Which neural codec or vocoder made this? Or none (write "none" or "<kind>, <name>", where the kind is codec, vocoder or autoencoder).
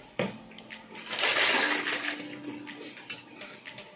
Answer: none